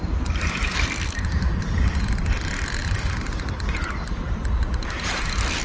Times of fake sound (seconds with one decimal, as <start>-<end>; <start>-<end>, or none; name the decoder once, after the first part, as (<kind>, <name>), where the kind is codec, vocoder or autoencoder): none